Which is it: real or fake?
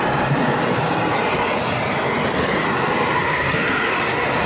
real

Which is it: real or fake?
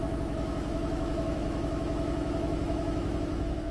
fake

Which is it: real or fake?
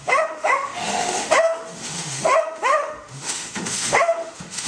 fake